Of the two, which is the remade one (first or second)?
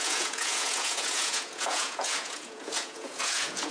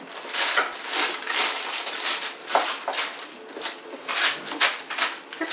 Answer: first